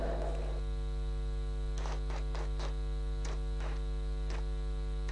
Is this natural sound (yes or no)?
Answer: yes